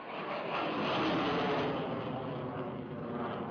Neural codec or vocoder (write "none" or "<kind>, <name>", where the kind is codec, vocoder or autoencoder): none